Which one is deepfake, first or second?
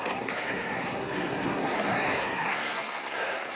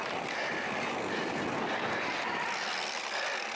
first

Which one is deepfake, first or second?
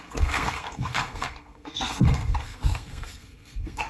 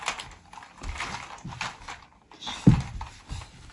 first